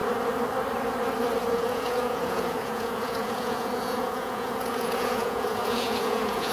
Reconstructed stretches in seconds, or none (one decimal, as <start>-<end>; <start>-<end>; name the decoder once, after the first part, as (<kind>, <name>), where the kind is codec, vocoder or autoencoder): 1.5-6.5 (vocoder, Vocos)